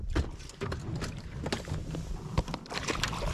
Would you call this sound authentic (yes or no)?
yes